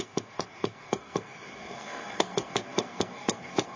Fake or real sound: fake